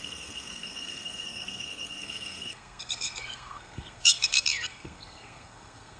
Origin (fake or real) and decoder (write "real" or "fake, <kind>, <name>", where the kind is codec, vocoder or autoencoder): fake, codec, SNAC